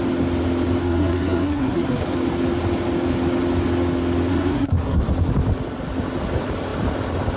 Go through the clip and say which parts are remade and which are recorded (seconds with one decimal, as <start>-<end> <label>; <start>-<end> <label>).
0.0-0.8 recorded; 0.8-2.0 remade; 2.0-4.3 recorded; 4.3-5.1 remade; 5.1-7.4 recorded